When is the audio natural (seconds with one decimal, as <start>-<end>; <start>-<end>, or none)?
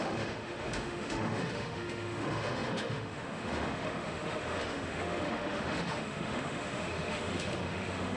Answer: none